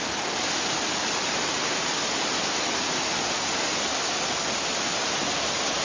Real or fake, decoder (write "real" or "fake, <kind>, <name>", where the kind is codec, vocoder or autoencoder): real